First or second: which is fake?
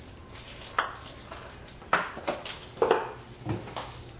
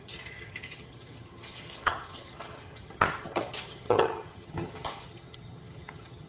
second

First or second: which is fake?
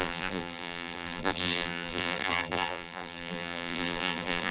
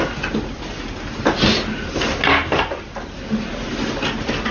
first